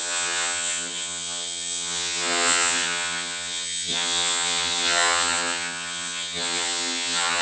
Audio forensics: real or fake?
fake